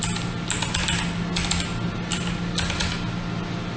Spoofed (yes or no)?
no